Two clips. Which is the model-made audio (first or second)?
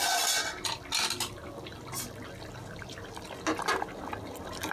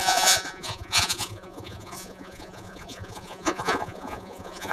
second